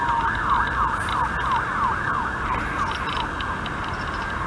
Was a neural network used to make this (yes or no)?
no